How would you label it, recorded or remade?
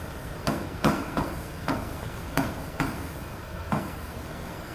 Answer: remade